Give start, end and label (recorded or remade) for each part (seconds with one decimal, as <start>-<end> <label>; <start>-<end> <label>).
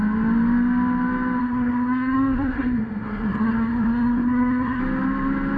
0.0-1.4 recorded; 1.4-4.8 remade; 4.8-5.6 recorded